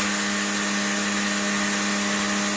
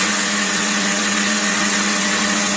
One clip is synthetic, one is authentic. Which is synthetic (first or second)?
second